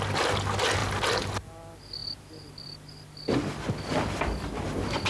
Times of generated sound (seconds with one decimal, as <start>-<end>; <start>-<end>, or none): none